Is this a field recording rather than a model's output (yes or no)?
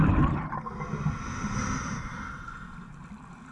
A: yes